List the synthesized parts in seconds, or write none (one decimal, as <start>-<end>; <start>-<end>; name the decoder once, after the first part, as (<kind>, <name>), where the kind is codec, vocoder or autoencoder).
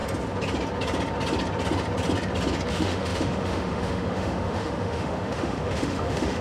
2.7-6.4 (autoencoder, DAC-VAE)